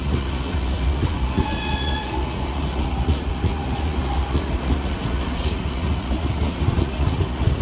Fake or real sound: fake